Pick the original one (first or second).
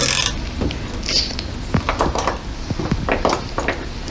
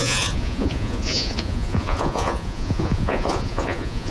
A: first